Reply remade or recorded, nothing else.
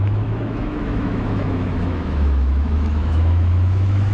remade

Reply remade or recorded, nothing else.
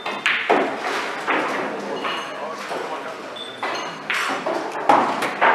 recorded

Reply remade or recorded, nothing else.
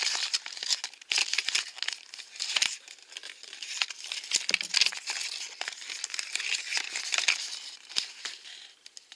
recorded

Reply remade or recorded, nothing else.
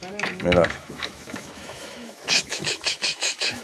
remade